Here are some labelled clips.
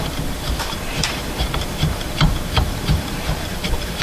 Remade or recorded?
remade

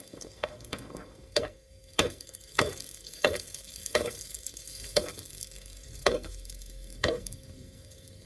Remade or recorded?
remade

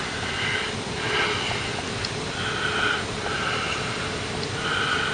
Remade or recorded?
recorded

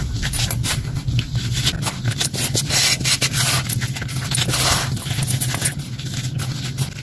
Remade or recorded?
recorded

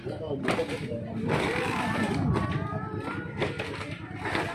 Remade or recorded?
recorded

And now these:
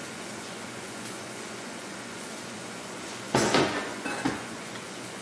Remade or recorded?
remade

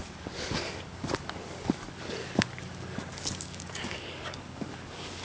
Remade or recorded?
remade